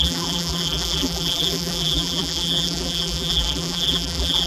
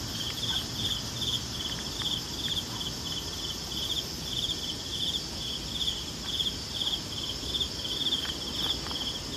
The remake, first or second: first